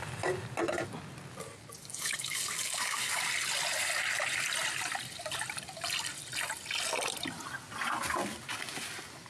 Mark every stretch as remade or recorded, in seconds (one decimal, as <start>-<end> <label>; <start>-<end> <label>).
0.0-1.8 recorded; 1.8-3.2 remade; 3.2-9.3 recorded